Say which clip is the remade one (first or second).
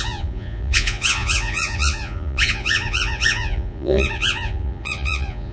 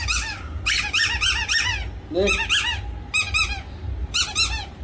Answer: first